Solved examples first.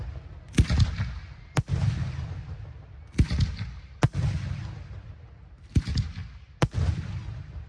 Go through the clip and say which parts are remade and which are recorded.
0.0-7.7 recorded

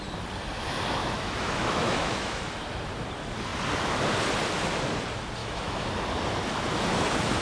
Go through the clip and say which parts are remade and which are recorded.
0.0-1.0 recorded; 1.0-2.4 remade; 2.4-5.4 recorded; 5.4-5.9 remade; 5.9-7.4 recorded

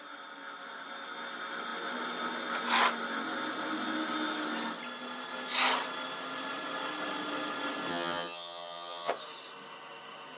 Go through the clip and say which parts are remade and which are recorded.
0.0-7.9 recorded; 7.9-9.1 remade; 9.1-10.4 recorded

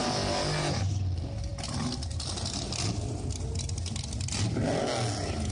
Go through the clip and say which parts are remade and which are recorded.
0.0-5.5 recorded

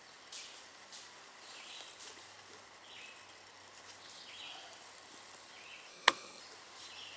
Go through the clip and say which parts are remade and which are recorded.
0.0-5.9 recorded; 5.9-6.4 remade; 6.4-7.2 recorded

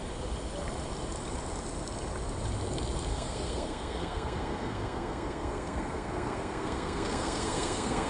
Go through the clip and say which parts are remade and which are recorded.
0.0-3.1 recorded; 3.1-8.1 remade